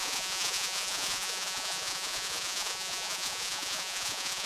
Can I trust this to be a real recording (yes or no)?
no